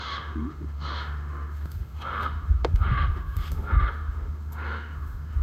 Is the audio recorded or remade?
remade